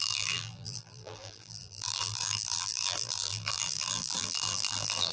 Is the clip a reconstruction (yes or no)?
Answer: yes